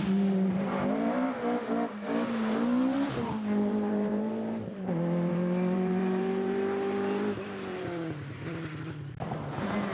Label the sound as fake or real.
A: fake